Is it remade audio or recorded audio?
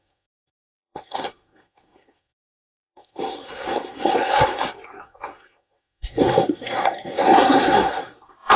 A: remade